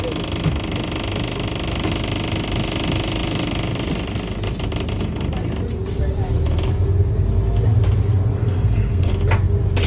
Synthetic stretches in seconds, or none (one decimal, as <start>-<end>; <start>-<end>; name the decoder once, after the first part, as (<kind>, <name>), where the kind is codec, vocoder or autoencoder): 8.4-9.1 (codec, SNAC)

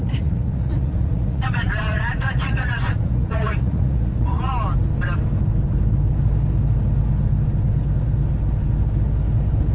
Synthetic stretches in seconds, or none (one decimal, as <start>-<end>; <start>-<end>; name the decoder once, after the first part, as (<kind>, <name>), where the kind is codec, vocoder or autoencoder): 0.0-4.5 (vocoder, Vocos)

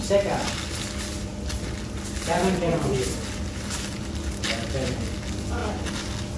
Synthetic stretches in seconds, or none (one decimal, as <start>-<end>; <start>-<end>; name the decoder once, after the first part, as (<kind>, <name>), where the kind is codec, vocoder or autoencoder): none

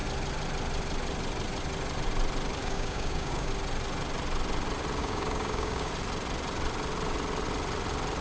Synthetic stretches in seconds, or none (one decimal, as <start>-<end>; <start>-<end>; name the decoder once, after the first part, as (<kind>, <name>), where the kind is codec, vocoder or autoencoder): 2.6-3.5 (codec, DAC); 5.0-5.9